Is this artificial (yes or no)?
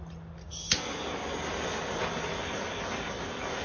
no